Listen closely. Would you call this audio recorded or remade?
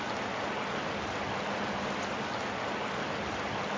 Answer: recorded